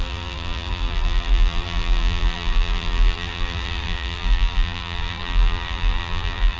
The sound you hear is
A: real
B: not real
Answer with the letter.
B